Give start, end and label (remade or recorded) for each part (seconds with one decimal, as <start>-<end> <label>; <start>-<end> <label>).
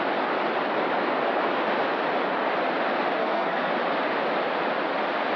0.0-3.2 recorded; 3.2-3.7 remade; 3.7-5.4 recorded